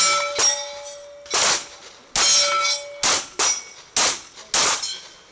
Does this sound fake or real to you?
real